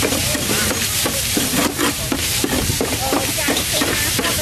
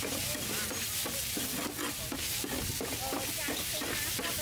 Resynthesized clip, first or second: first